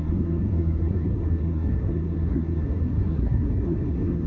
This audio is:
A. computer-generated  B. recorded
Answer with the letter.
A